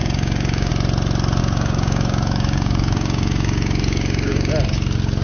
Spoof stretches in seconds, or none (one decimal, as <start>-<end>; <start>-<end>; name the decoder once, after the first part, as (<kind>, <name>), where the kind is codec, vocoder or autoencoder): 0.0-0.7 (codec, DAC); 1.4-4.5